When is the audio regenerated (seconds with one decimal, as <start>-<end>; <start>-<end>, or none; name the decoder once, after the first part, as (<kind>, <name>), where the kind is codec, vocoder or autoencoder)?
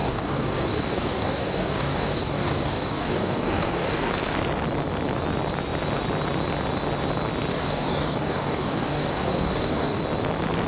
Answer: 0.0-4.1 (codec, DAC); 7.5-10.0